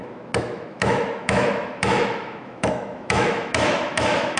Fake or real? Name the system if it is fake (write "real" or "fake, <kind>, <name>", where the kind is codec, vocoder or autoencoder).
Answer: fake, autoencoder, DAC-VAE